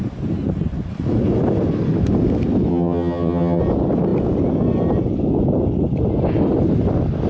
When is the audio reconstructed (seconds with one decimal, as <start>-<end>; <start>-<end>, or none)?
2.7-3.6